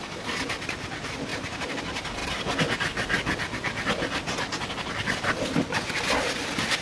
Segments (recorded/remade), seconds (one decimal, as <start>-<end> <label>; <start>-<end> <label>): 0.0-1.3 recorded; 1.3-1.8 remade; 1.8-6.8 recorded